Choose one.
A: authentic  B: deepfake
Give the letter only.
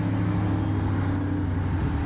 A